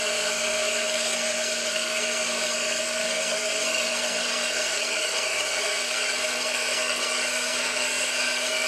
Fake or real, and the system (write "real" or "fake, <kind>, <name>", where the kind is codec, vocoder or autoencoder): fake, codec, SNAC